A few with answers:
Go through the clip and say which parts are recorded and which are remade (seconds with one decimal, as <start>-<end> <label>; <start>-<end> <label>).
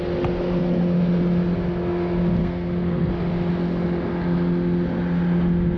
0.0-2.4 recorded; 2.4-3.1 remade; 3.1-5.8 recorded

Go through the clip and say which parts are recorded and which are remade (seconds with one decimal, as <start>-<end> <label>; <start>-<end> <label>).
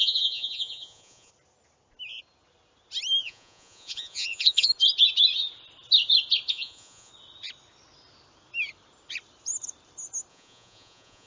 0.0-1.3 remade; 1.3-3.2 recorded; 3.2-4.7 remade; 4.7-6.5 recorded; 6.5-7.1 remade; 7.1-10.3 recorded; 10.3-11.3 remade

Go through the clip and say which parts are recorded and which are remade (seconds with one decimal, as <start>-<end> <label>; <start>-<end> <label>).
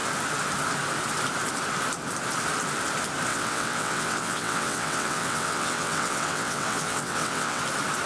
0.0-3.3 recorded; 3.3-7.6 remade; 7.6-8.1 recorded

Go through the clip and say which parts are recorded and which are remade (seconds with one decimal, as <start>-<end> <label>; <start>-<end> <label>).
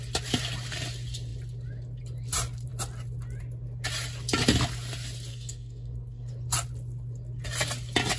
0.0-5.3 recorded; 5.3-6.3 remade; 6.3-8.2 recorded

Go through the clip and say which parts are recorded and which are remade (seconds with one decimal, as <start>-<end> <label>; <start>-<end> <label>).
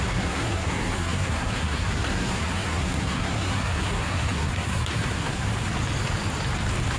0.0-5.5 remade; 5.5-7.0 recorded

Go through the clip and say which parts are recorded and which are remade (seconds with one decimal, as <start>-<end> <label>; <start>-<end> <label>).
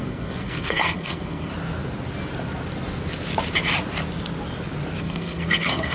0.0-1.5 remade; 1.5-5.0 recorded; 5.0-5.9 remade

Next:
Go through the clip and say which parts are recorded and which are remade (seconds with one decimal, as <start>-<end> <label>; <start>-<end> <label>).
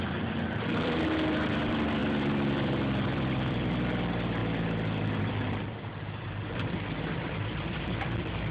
0.0-4.4 remade; 4.4-5.2 recorded; 5.2-8.5 remade